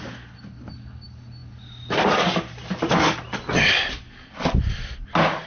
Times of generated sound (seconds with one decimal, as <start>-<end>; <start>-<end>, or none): none

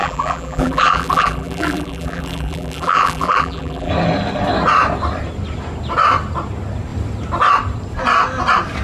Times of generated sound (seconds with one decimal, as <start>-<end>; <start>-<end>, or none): 0.0-3.9

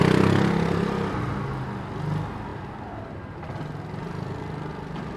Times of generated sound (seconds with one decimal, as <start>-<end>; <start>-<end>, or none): none

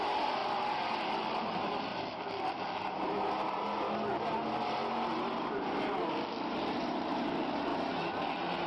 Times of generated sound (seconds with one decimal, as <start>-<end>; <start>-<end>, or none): 0.0-1.9; 6.5-7.7; 8.2-8.7